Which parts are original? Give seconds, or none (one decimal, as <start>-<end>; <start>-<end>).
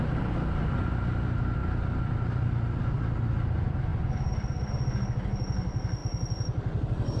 0.0-7.2